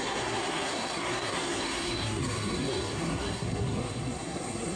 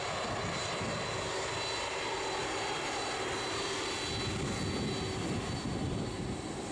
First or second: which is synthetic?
first